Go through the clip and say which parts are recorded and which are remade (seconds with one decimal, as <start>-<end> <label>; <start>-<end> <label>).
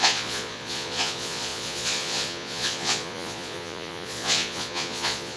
0.0-5.4 remade